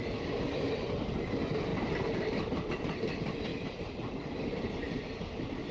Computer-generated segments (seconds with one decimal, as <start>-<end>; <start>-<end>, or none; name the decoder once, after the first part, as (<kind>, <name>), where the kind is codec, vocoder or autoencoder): none